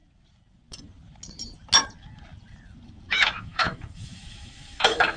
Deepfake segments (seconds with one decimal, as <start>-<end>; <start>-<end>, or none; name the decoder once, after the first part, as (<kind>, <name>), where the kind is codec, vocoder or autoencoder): 3.1-5.2 (autoencoder, DAC-VAE)